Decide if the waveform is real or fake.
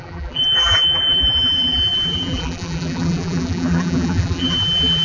fake